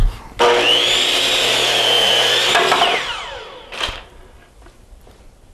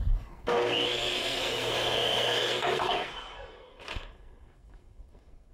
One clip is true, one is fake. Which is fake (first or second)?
second